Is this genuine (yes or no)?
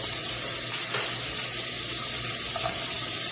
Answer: yes